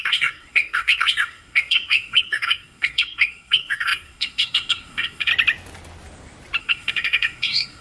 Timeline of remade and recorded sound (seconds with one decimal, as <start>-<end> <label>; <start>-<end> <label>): 0.0-5.3 remade; 5.3-6.6 recorded; 6.6-7.8 remade